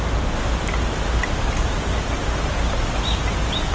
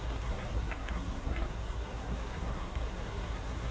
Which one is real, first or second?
first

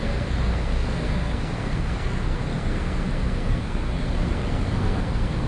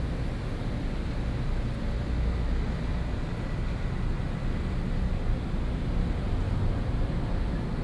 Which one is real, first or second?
second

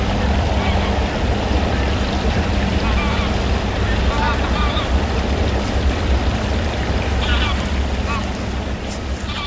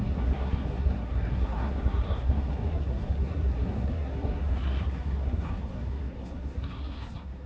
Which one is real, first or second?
first